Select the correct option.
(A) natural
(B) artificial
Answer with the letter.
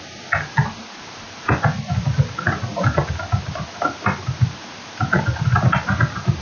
A